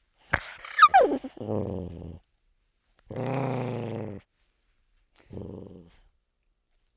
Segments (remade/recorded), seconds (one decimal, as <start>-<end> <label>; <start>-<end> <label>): 0.0-7.0 recorded